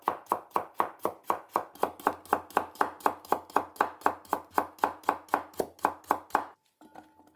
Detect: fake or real real